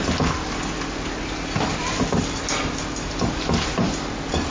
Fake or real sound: real